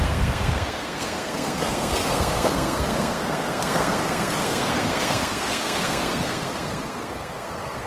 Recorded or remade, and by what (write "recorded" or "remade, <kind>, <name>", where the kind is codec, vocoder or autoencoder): remade, codec, SNAC